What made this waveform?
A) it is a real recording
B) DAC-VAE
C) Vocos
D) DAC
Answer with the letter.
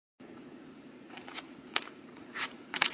C